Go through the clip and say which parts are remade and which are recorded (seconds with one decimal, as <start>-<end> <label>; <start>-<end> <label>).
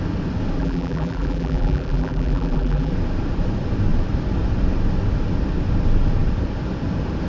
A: 0.0-0.6 recorded; 0.6-2.9 remade; 2.9-7.3 recorded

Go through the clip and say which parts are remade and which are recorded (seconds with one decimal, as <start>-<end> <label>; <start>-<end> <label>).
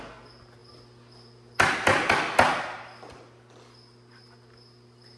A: 0.0-5.2 recorded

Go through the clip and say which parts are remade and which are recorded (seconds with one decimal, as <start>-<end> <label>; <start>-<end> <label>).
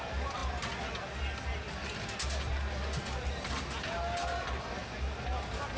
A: 0.0-5.8 recorded